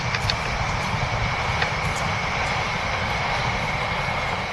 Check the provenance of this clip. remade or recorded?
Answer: recorded